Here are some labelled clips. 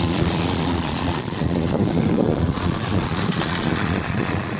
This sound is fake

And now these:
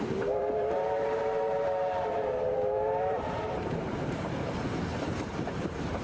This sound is fake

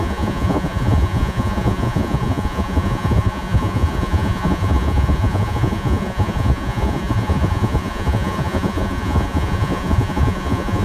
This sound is fake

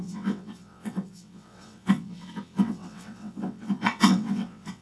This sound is fake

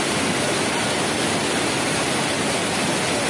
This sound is real